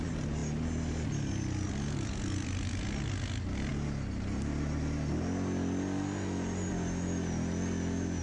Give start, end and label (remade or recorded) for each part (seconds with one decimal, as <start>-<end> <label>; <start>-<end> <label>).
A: 0.0-8.2 recorded